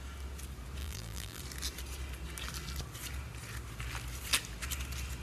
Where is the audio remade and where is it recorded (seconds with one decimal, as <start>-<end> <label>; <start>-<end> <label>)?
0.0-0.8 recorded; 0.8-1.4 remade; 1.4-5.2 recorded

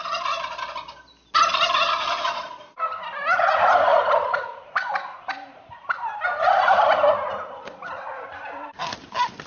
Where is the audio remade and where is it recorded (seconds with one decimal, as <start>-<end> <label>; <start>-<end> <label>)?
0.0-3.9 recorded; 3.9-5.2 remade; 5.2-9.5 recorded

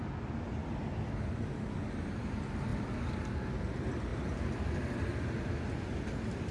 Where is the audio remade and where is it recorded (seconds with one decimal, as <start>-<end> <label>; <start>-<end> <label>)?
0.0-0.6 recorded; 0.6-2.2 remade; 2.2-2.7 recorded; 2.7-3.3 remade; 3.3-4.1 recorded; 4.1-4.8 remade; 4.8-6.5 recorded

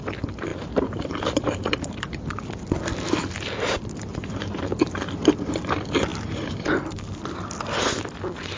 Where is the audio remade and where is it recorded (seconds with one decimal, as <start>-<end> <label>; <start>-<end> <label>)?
0.0-0.5 recorded; 0.5-1.9 remade; 1.9-4.1 recorded; 4.1-4.7 remade; 4.7-6.1 recorded; 6.1-7.2 remade; 7.2-8.6 recorded

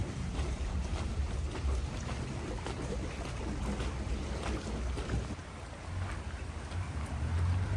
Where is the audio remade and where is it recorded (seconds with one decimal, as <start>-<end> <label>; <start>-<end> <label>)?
0.0-3.4 remade; 3.4-7.8 recorded

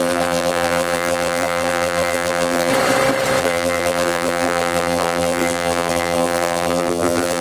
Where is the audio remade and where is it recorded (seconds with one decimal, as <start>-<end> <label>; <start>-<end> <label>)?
0.0-2.7 remade; 2.7-3.4 recorded; 3.4-7.4 remade